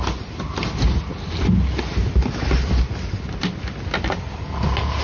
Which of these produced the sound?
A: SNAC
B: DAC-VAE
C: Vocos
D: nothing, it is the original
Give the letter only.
D